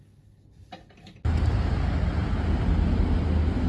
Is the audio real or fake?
real